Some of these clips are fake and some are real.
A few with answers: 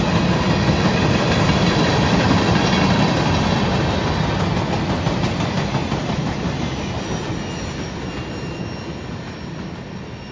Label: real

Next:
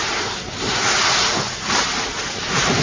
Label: real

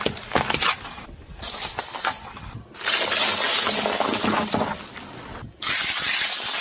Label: real